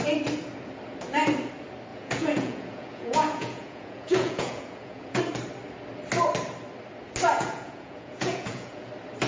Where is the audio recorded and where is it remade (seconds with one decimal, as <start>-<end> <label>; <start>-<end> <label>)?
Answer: 0.0-1.9 recorded; 1.9-5.2 remade; 5.2-7.3 recorded; 7.3-8.9 remade; 8.9-9.3 recorded